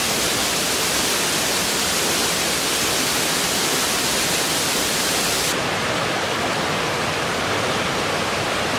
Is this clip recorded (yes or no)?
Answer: yes